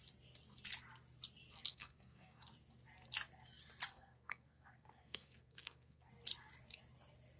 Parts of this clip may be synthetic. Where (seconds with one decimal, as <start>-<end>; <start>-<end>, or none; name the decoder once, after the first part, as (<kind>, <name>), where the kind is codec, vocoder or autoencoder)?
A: 1.7-2.5 (codec, SNAC); 3.9-6.1